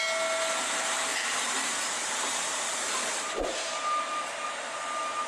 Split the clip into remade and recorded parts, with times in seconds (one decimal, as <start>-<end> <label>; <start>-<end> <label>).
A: 0.0-1.1 recorded; 1.1-4.3 remade; 4.3-5.3 recorded